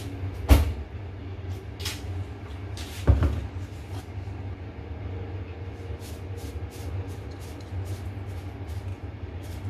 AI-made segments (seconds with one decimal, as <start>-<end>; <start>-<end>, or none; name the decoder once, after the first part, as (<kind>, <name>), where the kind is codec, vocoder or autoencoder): 8.9-9.7 (vocoder, BigVGAN v2)